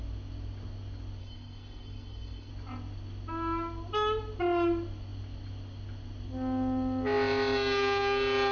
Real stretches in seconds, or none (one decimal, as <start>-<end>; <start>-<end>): 0.0-1.2; 2.5-8.5